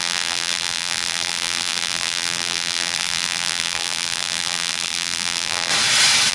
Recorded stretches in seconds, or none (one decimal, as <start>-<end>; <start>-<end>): 5.7-6.3